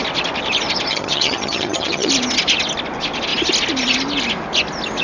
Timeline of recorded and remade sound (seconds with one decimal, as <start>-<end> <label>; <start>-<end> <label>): 0.0-0.9 recorded; 0.9-2.1 remade; 2.1-5.0 recorded